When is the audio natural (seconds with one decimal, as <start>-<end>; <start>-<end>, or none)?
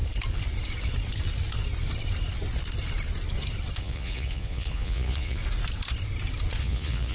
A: 0.0-3.8; 5.4-6.6